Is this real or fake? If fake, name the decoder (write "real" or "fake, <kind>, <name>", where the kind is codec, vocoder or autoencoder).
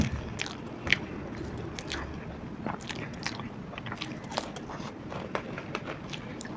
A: real